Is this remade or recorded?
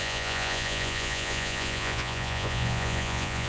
remade